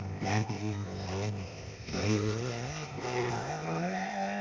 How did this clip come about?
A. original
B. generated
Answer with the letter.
B